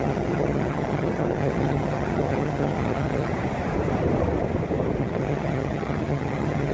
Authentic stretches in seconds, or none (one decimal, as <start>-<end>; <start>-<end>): 3.3-5.0